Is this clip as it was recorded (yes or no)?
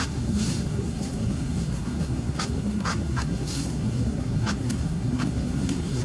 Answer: no